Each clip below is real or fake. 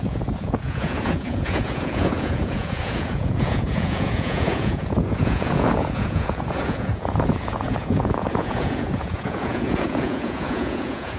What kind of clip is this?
fake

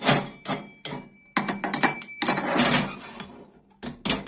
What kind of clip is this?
real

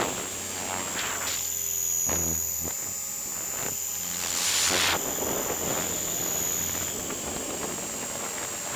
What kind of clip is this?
real